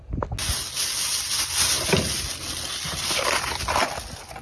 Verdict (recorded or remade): recorded